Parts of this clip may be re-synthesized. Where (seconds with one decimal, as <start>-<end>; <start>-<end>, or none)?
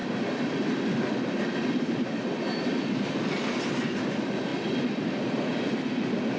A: none